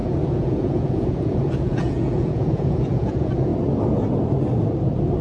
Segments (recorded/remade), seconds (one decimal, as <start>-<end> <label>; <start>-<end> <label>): 0.0-3.5 remade; 3.5-5.2 recorded